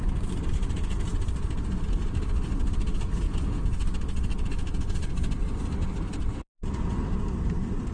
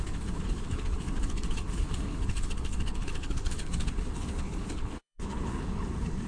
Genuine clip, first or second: first